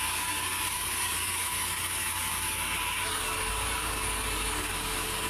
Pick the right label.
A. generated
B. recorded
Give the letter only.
A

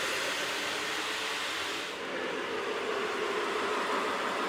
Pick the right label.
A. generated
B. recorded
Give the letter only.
B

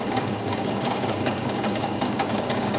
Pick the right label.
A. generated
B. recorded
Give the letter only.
A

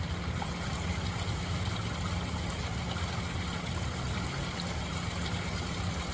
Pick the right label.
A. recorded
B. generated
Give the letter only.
A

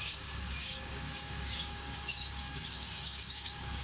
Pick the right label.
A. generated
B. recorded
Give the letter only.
A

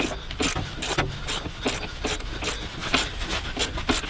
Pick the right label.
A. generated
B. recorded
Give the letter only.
B